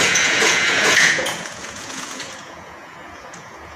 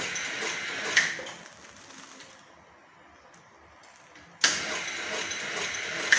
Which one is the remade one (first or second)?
first